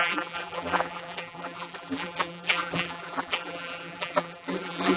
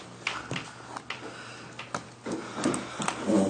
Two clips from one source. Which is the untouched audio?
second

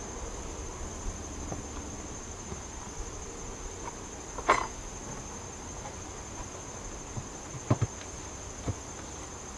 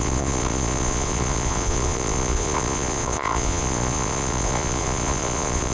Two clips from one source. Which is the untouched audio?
first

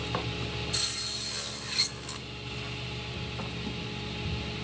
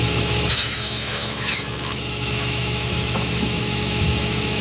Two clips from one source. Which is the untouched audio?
first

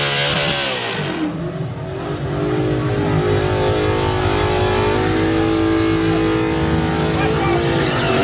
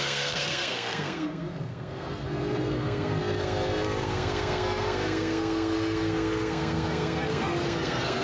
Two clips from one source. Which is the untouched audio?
first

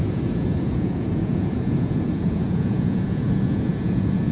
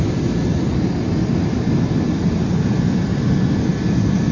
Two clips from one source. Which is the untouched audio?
second